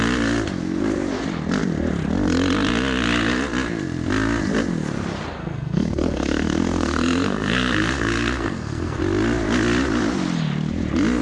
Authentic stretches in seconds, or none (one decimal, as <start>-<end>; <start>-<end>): 0.0-5.4; 9.0-11.2